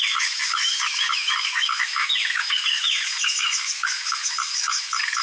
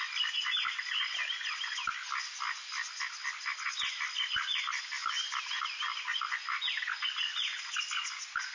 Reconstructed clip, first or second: first